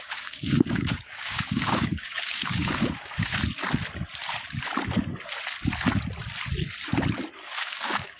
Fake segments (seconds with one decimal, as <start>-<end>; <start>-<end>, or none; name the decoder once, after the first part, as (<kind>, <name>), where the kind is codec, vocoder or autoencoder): 0.0-3.4 (codec, DAC); 7.4-8.2